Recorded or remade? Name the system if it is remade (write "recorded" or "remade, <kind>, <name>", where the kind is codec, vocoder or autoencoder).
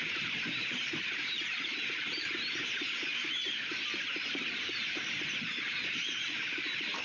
remade, vocoder, BigVGAN v2